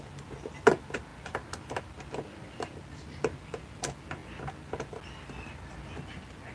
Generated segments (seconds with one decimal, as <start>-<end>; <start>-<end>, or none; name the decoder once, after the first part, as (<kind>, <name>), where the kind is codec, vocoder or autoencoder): none